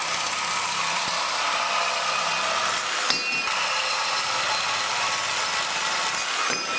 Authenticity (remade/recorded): recorded